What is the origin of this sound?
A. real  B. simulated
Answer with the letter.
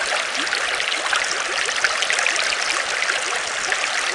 A